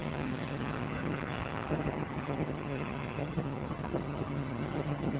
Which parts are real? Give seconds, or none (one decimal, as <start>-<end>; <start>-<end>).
none